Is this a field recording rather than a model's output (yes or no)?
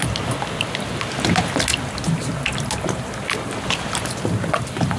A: yes